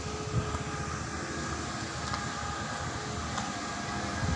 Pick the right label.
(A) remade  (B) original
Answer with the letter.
B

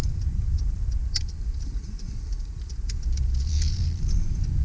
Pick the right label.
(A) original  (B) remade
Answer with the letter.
B